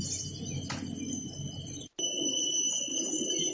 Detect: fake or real real